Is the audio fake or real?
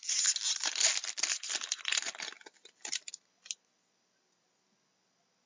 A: real